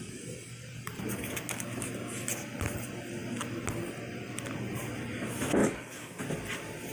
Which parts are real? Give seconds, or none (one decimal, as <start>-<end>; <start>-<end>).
0.0-5.6; 6.2-6.9